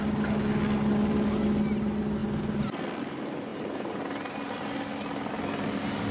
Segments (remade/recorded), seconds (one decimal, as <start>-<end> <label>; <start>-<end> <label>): 0.0-6.1 recorded